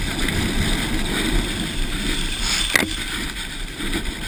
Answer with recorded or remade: recorded